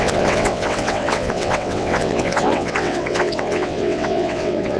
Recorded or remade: remade